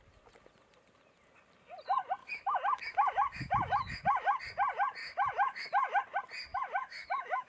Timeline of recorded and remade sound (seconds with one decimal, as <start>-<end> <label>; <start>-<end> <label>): 0.0-2.2 recorded; 2.2-4.4 remade; 4.4-5.0 recorded; 5.0-6.0 remade; 6.0-6.5 recorded; 6.5-7.5 remade